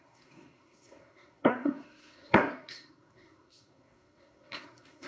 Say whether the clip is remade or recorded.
remade